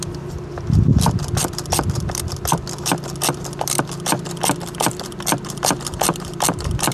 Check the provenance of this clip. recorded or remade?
remade